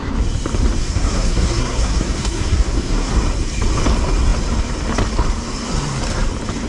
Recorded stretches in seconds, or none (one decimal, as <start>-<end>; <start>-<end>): 0.0-0.8; 3.1-6.7